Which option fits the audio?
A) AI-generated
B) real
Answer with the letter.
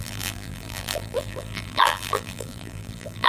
A